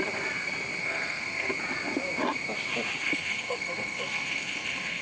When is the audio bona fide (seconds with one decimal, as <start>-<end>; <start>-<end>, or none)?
0.0-0.8; 1.5-3.0